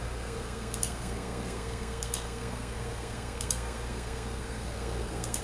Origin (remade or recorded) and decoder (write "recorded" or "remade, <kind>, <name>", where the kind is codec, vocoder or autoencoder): remade, codec, SNAC